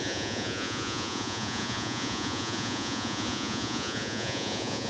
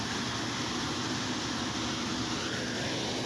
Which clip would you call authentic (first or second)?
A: second